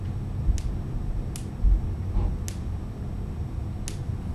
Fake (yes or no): no